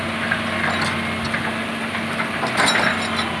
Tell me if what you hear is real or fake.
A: real